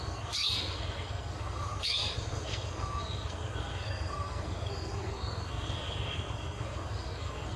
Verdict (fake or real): fake